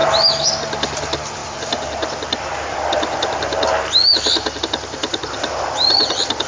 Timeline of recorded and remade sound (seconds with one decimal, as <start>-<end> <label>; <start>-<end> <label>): 0.0-0.5 remade; 0.5-6.5 recorded